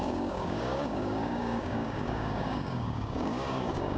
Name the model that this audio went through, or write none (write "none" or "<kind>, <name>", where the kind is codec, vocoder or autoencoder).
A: codec, DAC